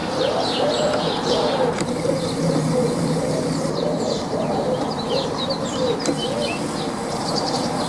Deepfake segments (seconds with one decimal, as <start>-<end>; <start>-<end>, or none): 0.0-4.9; 7.1-7.9